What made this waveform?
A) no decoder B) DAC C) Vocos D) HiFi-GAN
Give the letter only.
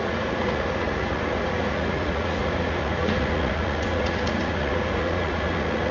C